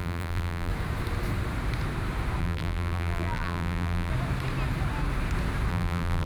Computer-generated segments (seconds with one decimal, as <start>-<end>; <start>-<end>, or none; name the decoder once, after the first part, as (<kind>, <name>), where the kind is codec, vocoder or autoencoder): 0.0-0.7 (vocoder, BigVGAN v2); 2.4-4.1; 5.7-6.3